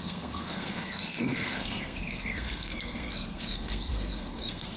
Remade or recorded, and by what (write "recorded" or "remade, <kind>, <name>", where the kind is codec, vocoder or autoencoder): remade, codec, SNAC